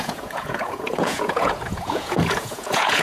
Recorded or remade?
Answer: remade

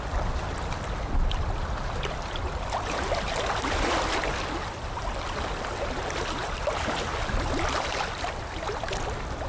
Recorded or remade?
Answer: recorded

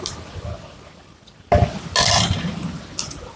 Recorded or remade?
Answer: recorded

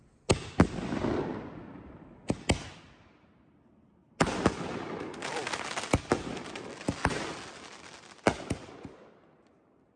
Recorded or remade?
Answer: recorded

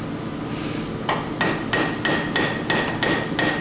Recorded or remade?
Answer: recorded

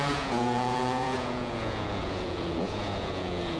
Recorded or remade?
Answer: remade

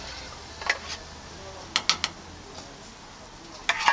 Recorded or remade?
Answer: recorded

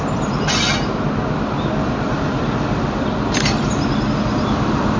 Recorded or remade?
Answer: recorded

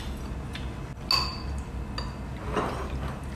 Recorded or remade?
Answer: recorded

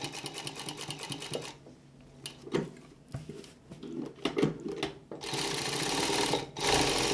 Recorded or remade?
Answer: recorded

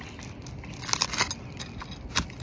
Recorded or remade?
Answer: recorded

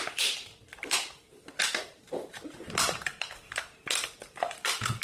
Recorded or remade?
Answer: remade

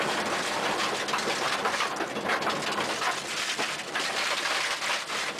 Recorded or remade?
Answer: recorded